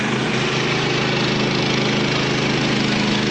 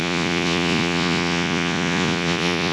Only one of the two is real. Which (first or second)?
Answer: first